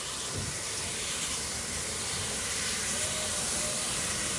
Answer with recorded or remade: remade